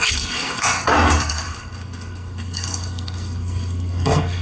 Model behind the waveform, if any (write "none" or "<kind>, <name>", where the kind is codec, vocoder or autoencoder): codec, SNAC